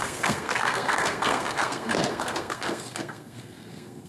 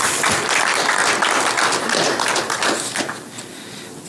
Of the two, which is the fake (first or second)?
first